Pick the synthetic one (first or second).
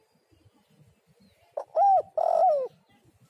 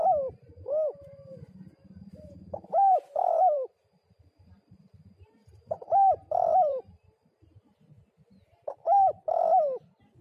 second